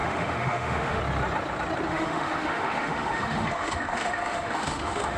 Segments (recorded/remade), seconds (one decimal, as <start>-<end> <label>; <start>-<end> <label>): 0.0-1.0 remade; 1.0-1.9 recorded; 1.9-5.2 remade